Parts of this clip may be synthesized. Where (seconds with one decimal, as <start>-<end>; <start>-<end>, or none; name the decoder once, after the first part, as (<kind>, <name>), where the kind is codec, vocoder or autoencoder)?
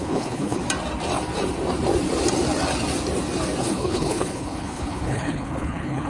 0.0-0.6 (codec, HILCodec); 3.6-6.1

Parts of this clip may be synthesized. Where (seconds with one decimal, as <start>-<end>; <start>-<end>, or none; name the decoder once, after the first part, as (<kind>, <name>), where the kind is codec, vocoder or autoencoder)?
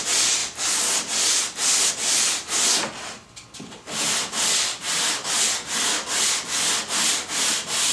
none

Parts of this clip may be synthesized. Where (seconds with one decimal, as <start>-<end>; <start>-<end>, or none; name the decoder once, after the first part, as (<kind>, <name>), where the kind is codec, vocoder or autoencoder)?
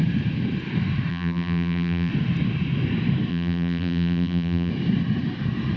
1.1-2.1 (vocoder, BigVGAN v2); 3.3-4.7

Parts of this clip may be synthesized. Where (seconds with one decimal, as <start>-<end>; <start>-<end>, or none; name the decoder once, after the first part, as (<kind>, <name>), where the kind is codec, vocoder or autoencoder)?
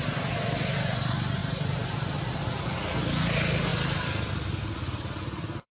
none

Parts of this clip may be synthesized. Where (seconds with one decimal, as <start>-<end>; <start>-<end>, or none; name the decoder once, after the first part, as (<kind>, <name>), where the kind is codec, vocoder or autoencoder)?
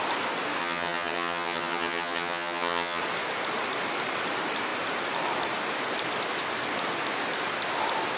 0.6-3.0 (vocoder, HiFi-GAN)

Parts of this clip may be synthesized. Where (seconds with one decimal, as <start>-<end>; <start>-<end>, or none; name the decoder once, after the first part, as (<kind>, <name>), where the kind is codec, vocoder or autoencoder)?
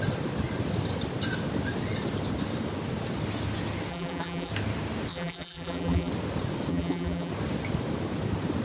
3.9-4.5 (vocoder, BigVGAN v2); 5.1-6.1; 6.7-7.3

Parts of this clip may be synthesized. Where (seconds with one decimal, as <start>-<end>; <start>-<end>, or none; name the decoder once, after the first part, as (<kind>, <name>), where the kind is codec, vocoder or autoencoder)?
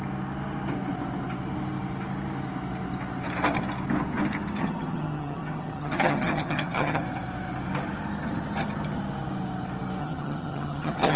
4.6-7.0 (vocoder, HiFi-GAN); 10.0-11.2